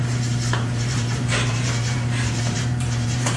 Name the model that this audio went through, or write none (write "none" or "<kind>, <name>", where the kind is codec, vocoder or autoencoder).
vocoder, BigVGAN v2